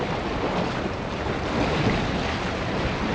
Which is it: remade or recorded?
recorded